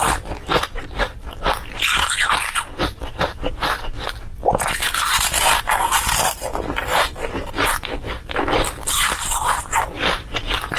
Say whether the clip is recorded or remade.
remade